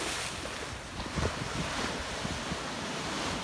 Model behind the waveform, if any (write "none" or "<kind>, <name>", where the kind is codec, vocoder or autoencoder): none